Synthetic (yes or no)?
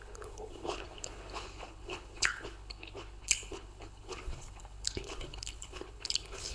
yes